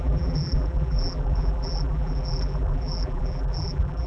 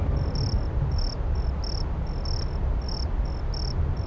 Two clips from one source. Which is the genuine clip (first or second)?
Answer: second